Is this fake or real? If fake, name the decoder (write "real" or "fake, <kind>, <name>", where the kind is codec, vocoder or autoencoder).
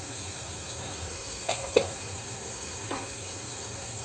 fake, codec, SNAC